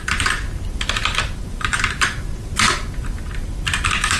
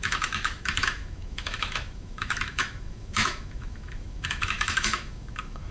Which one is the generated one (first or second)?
second